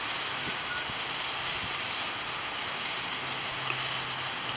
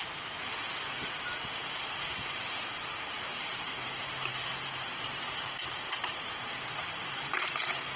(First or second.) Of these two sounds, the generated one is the second